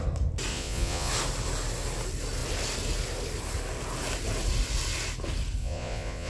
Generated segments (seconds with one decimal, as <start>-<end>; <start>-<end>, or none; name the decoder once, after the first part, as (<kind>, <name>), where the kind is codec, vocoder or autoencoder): 0.5-1.1 (vocoder, Vocos); 5.6-6.3